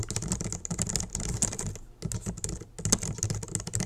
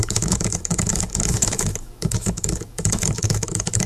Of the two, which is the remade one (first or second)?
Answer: second